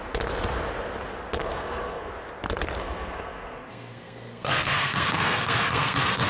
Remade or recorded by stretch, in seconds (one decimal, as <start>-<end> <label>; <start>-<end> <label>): 0.0-1.4 recorded; 1.4-2.1 remade; 2.1-2.8 recorded; 2.8-6.3 remade